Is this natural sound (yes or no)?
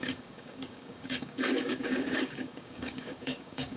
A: no